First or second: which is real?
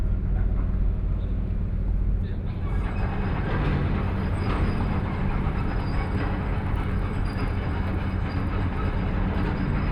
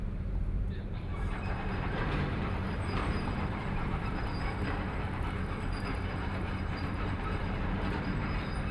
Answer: first